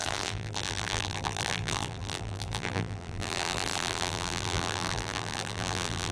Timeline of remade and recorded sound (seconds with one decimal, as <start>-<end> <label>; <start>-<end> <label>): 0.0-6.1 remade